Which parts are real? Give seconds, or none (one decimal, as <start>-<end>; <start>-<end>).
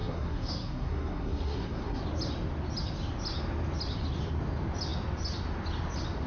2.0-6.3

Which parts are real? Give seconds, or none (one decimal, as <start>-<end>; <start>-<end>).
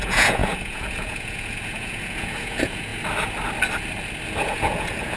2.9-4.4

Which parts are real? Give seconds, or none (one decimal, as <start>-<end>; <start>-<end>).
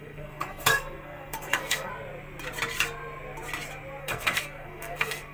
1.9-4.0